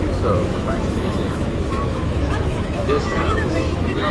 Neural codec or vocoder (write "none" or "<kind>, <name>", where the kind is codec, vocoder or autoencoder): autoencoder, DAC-VAE